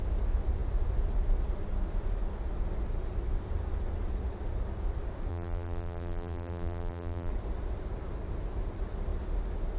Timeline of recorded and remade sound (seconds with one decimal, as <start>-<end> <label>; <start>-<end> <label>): 0.0-5.3 recorded; 5.3-7.3 remade; 7.3-9.8 recorded